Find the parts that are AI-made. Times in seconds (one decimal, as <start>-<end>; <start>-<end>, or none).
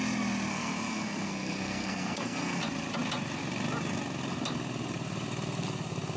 0.5-2.6